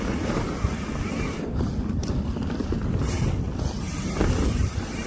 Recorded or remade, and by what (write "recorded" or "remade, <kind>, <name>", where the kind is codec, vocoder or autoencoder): recorded